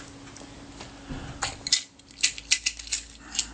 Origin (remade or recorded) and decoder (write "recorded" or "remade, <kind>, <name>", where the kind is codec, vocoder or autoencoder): recorded